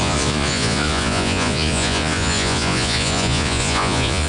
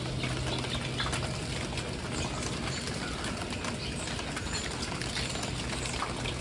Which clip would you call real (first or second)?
second